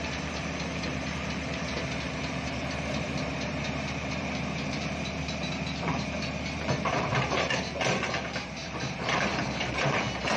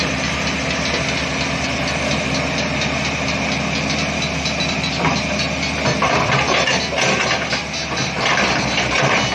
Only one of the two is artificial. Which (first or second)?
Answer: first